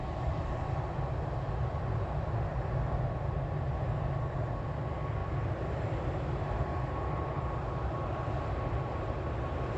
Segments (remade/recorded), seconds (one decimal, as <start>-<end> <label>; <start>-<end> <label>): 0.0-5.2 recorded; 5.2-5.9 remade; 5.9-9.8 recorded